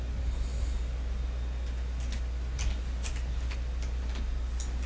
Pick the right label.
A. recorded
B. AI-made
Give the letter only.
A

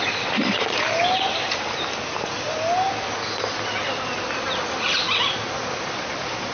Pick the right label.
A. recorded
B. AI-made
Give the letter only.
A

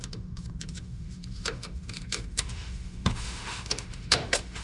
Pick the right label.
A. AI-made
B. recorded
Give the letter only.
A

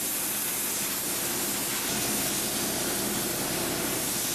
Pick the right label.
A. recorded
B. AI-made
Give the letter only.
A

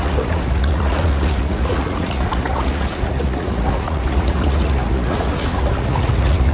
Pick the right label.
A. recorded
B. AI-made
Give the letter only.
B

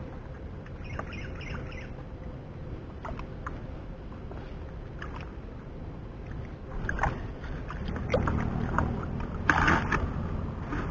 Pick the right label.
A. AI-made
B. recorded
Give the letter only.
B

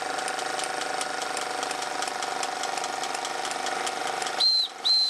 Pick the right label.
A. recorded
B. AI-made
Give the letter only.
A